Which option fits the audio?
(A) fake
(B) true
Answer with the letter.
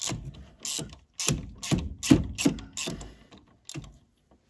B